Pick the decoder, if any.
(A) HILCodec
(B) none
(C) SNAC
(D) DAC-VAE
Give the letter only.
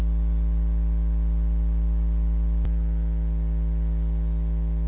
B